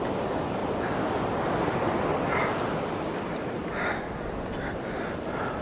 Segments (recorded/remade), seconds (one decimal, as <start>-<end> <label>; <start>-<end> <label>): 0.0-5.6 recorded